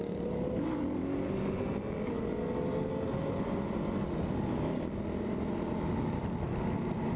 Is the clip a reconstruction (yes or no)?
no